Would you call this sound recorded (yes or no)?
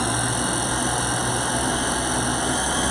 yes